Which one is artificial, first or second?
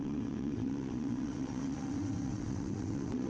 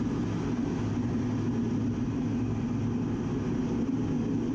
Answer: first